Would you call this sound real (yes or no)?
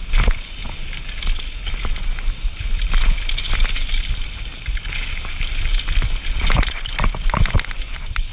yes